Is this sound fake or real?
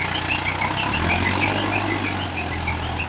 real